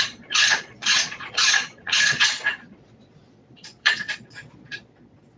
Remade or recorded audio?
remade